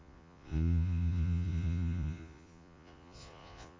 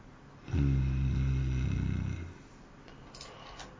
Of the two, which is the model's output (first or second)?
first